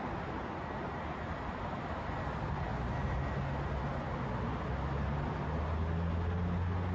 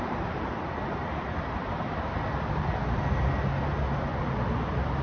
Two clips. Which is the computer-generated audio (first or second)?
second